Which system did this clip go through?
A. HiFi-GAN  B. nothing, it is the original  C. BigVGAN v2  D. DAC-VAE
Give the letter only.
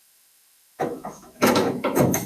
D